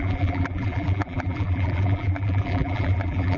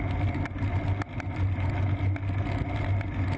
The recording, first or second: second